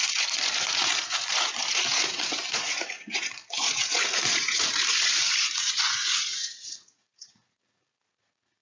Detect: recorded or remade remade